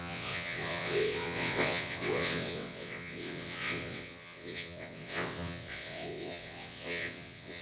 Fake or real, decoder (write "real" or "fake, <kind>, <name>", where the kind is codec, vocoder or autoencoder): fake, vocoder, WaveNeXt